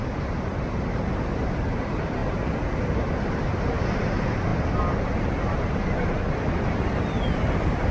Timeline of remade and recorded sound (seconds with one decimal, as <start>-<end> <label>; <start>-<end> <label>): 0.0-2.2 remade; 2.2-3.1 recorded; 3.1-4.5 remade; 4.5-5.2 recorded; 5.2-7.9 remade